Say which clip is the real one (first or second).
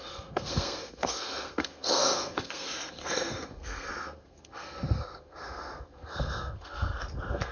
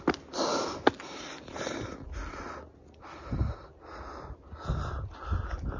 second